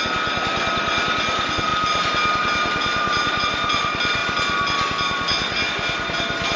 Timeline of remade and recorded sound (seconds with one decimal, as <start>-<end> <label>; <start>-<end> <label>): 0.0-6.6 recorded